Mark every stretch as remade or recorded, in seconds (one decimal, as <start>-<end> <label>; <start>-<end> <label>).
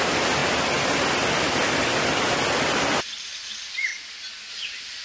0.0-0.4 remade; 0.4-1.4 recorded; 1.4-3.9 remade; 3.9-4.5 recorded; 4.5-5.0 remade